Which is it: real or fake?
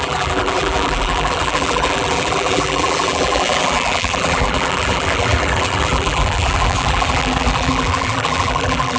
fake